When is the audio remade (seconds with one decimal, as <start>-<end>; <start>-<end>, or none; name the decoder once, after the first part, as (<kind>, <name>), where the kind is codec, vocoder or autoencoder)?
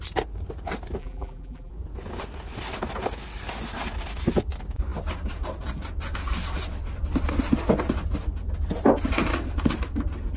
1.0-1.7 (vocoder, BigVGAN v2)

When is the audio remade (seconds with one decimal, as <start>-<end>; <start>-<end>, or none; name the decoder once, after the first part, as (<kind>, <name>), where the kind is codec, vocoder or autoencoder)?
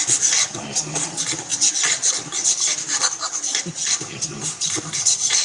1.5-3.6 (vocoder, BigVGAN v2)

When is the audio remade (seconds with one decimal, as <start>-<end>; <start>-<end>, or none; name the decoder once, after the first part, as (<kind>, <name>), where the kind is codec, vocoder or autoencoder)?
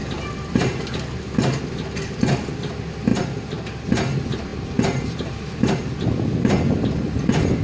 0.0-0.8 (vocoder, BigVGAN v2); 3.1-3.9; 4.5-5.8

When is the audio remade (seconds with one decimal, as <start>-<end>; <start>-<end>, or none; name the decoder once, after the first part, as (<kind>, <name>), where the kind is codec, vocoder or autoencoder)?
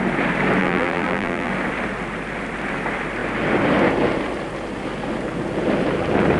0.6-1.5 (vocoder, BigVGAN v2)